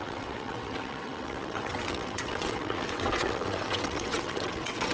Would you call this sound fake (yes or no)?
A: yes